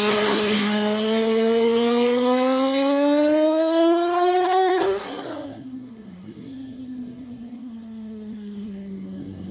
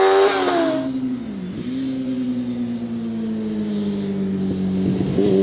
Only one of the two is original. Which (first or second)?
second